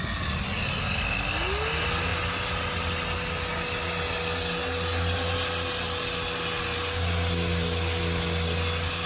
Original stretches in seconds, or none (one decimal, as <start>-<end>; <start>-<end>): 0.0-9.1